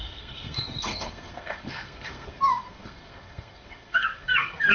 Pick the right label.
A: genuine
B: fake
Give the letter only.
B